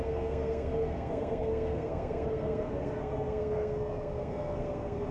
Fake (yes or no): yes